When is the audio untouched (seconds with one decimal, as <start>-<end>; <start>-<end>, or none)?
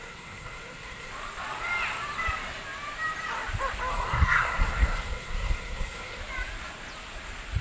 1.1-3.9; 6.2-7.6